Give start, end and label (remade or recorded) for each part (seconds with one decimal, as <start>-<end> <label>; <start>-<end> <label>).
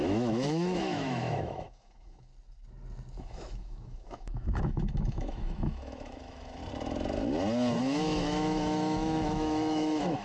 0.0-2.3 remade; 2.3-3.2 recorded; 3.2-6.6 remade; 6.6-7.8 recorded; 7.8-10.2 remade